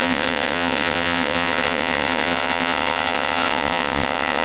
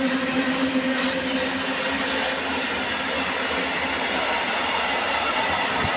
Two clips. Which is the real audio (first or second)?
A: second